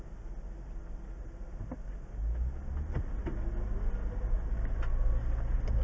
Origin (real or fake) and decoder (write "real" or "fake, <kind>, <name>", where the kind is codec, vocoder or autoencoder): real